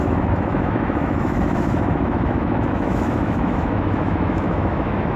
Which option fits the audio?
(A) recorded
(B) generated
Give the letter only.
B